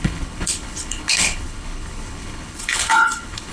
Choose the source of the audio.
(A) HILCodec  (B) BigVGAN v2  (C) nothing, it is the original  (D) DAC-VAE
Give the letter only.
A